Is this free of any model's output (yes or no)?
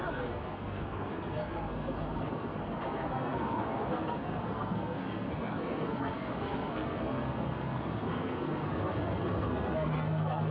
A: no